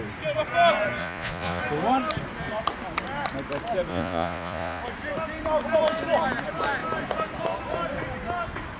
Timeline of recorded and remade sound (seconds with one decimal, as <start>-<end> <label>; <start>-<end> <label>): 0.0-1.0 recorded; 1.0-1.6 remade; 1.6-3.9 recorded; 3.9-4.8 remade; 4.8-8.8 recorded